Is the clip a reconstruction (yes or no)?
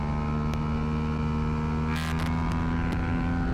no